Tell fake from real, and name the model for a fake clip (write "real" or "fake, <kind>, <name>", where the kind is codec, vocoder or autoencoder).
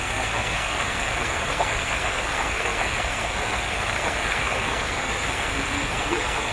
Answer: fake, codec, SNAC